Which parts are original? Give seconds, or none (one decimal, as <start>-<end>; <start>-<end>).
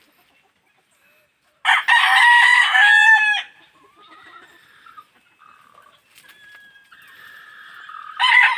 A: 0.0-8.6